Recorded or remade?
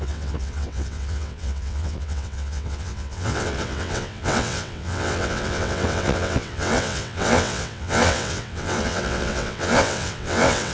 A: remade